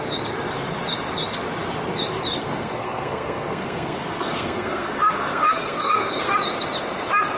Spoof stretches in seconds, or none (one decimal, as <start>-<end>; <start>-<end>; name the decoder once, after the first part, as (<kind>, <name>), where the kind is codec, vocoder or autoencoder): 2.4-6.3 (codec, SNAC)